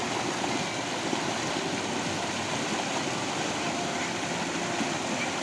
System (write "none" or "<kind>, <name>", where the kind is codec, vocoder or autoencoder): none